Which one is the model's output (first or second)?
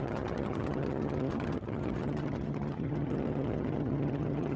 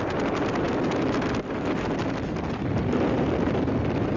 first